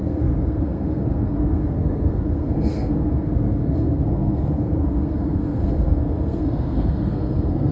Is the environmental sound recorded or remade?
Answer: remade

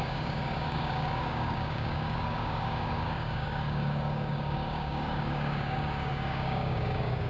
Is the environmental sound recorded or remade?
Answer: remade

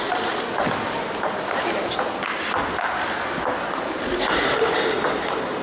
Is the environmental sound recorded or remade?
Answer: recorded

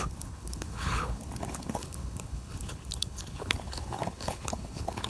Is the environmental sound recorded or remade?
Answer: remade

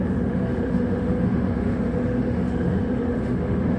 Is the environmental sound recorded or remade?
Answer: remade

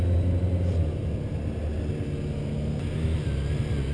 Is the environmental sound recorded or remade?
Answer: recorded